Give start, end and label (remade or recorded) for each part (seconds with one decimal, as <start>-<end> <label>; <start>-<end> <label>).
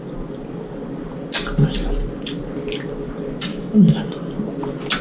0.0-3.5 recorded; 3.5-4.0 remade; 4.0-5.0 recorded